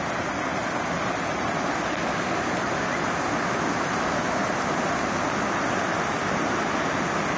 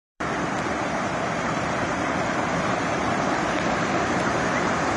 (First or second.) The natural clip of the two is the first